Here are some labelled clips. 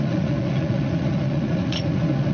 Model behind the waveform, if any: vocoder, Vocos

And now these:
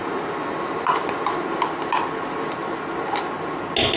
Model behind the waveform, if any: none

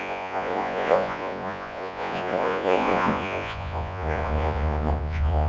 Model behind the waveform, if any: vocoder, Vocos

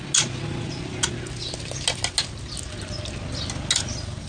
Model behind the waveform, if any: none